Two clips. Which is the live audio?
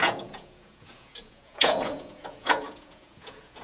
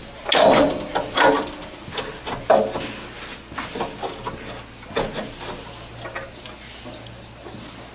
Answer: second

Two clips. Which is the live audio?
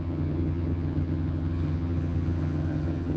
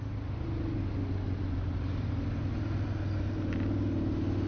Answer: second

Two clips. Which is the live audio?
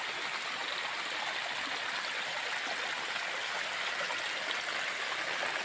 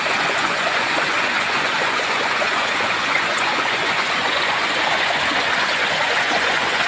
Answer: first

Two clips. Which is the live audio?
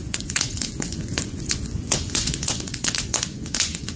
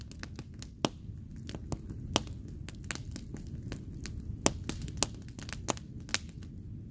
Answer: second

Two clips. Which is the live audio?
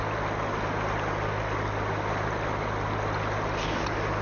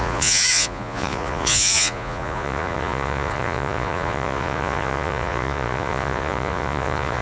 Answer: first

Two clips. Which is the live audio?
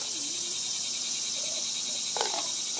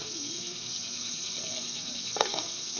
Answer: first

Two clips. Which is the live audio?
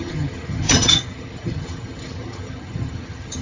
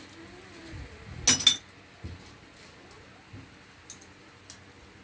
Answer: second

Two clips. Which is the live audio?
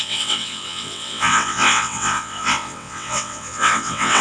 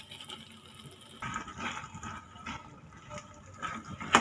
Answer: second